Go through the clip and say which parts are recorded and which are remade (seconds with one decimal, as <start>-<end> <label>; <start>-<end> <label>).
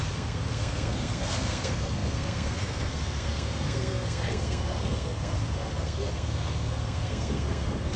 0.0-8.0 remade